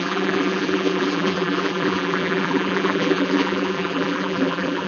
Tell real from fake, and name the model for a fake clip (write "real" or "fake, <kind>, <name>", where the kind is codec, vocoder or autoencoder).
fake, vocoder, BigVGAN v2